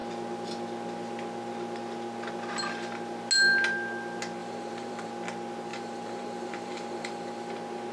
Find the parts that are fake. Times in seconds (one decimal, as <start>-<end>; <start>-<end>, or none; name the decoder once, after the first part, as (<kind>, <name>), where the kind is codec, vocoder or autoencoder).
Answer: 4.4-5.1 (vocoder, BigVGAN v2); 5.7-7.5